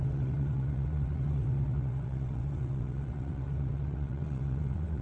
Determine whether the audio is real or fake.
fake